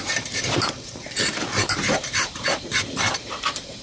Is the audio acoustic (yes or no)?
no